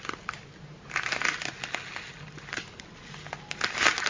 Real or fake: real